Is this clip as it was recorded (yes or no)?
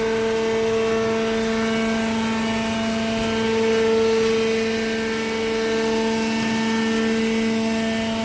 yes